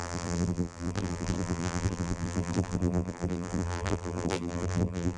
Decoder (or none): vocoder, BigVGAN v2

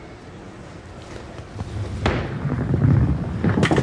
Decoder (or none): none